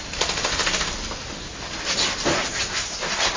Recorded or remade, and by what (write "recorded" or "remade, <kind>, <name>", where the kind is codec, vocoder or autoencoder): recorded